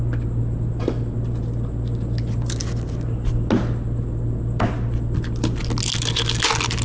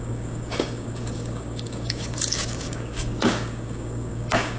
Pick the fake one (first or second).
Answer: second